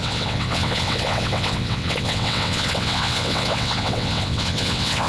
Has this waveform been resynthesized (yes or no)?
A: yes